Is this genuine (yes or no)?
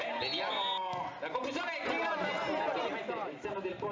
yes